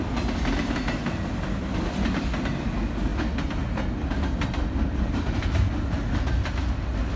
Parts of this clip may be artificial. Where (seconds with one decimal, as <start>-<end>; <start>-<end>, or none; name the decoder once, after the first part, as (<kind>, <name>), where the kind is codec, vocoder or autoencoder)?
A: none